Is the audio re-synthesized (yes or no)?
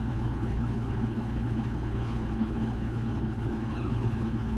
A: yes